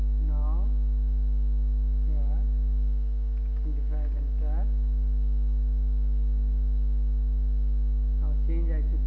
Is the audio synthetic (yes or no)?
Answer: no